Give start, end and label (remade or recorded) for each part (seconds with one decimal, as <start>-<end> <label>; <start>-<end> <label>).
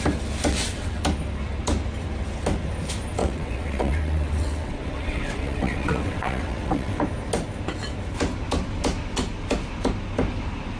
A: 0.0-0.5 recorded; 0.5-1.0 remade; 1.0-3.2 recorded; 3.2-7.0 remade; 7.0-10.8 recorded